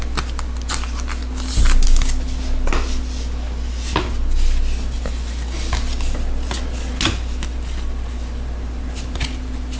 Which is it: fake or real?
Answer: real